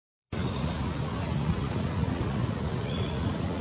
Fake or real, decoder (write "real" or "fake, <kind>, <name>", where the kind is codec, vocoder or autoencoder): fake, vocoder, Vocos